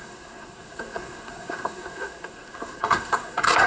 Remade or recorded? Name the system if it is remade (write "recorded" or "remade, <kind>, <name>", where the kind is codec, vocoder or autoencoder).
remade, codec, SNAC